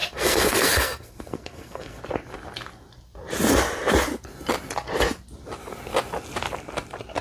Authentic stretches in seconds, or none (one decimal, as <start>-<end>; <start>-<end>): 2.0-7.2